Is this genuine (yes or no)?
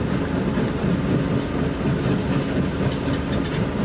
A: yes